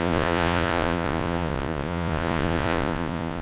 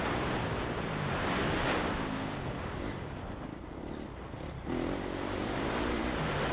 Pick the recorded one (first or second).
second